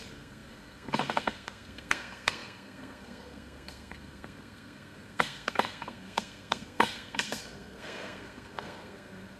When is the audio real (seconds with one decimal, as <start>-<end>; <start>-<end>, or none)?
none

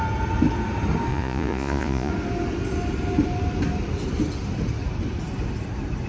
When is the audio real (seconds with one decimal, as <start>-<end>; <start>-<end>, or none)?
0.0-1.1; 2.1-6.1

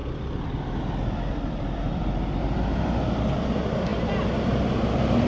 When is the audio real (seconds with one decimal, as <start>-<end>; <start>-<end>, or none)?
3.9-5.3

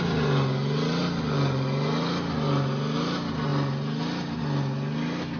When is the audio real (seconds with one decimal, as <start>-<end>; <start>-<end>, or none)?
0.0-5.4

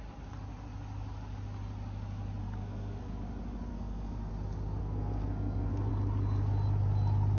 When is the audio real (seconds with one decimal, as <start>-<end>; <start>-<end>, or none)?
0.0-2.4; 3.1-3.7; 4.3-4.8; 5.9-7.4

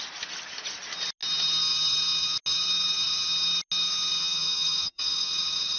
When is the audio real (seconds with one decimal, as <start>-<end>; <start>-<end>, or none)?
0.0-4.2; 5.3-5.8

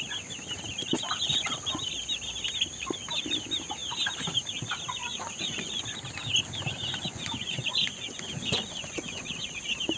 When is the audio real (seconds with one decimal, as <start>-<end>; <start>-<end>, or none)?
0.0-5.0; 5.8-6.8; 9.6-10.0